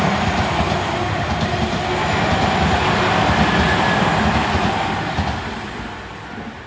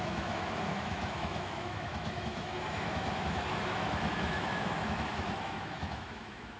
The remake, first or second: second